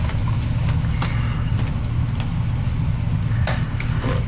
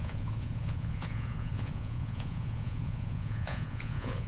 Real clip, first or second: first